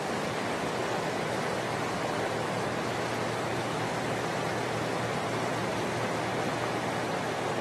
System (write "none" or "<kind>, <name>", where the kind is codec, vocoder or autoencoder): none